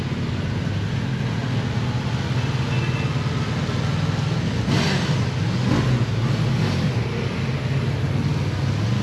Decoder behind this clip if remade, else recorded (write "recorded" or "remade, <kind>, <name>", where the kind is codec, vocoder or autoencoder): recorded